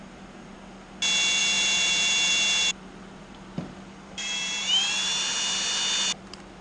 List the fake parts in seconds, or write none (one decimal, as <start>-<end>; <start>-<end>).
1.4-4.9